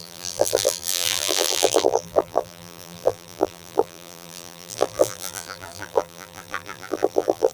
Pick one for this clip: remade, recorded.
remade